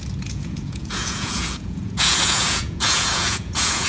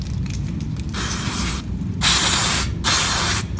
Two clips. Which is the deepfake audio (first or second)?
first